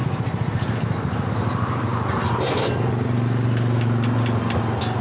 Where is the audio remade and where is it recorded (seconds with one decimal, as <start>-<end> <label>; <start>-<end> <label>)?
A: 0.0-5.0 recorded